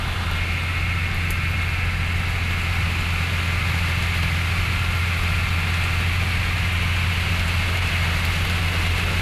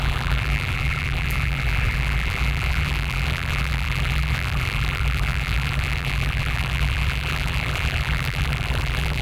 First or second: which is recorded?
first